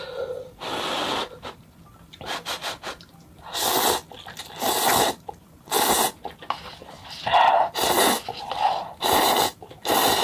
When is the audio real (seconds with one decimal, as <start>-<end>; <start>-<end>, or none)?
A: 0.0-10.2